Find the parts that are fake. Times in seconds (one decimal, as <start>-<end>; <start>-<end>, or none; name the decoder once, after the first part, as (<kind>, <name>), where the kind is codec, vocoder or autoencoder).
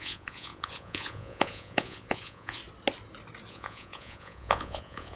0.0-2.6 (vocoder, Vocos); 3.5-5.2